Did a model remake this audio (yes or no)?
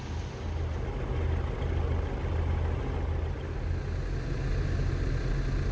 no